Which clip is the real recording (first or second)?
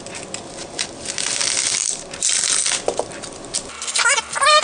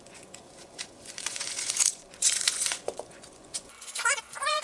first